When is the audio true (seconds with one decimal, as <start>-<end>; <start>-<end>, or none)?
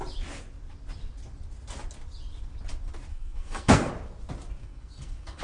0.0-3.1; 3.9-4.6